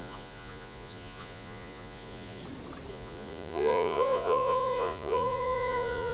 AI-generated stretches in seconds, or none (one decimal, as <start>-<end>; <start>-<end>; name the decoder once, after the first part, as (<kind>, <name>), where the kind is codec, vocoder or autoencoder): 0.0-2.4 (vocoder, Vocos); 2.9-6.1